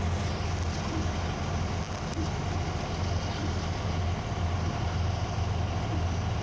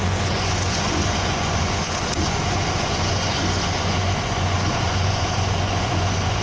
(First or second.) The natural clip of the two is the first